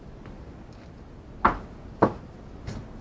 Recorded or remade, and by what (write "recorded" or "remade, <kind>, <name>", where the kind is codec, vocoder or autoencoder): recorded